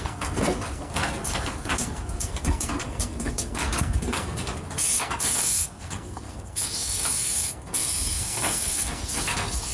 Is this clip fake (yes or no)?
yes